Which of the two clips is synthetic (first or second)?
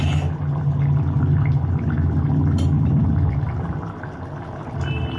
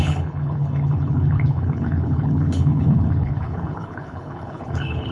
second